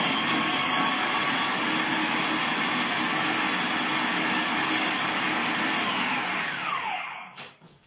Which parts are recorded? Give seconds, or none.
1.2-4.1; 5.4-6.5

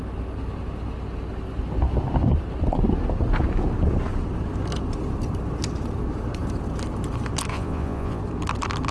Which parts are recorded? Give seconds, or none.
0.0-7.5; 8.2-8.9

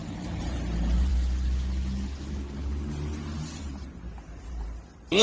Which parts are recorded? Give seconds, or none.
1.1-2.3; 2.7-4.4

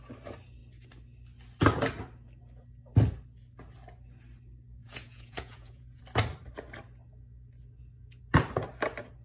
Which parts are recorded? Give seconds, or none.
0.0-4.8; 6.0-9.2

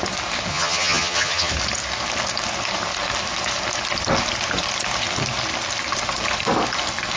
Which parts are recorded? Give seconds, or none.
0.0-0.5; 1.5-7.2